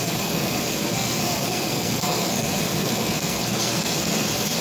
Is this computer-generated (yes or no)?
yes